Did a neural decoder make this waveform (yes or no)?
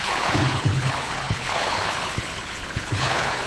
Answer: yes